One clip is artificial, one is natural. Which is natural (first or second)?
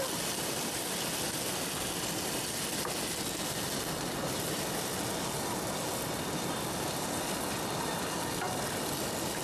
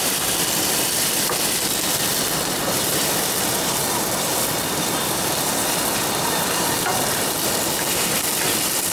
first